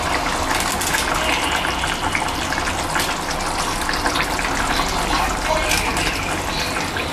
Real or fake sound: real